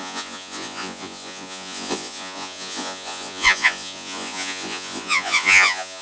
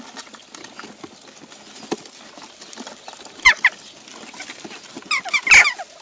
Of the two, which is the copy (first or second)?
first